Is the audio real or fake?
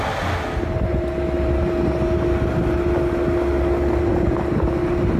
real